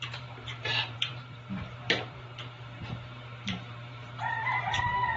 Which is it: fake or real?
fake